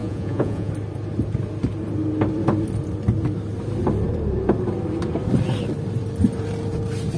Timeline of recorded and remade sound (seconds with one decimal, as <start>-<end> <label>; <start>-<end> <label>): 0.0-0.7 remade; 0.7-7.2 recorded